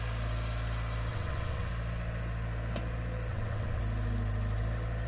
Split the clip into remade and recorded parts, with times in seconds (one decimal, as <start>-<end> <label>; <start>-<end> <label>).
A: 0.0-1.1 recorded; 1.1-1.7 remade; 1.7-3.3 recorded; 3.3-3.8 remade; 3.8-5.1 recorded